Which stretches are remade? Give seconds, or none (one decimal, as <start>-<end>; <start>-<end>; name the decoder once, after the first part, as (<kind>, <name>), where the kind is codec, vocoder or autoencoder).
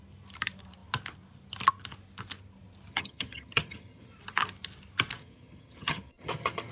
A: 2.9-4.1 (vocoder, HiFi-GAN); 5.2-6.7